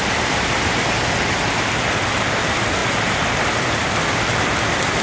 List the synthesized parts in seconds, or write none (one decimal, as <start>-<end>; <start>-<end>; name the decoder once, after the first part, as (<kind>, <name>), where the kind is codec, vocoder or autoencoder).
none